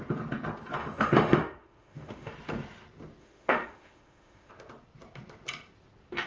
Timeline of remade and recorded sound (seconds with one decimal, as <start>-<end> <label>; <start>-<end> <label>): 0.0-0.8 recorded; 0.8-2.3 remade; 2.3-3.2 recorded; 3.2-4.5 remade; 4.5-6.3 recorded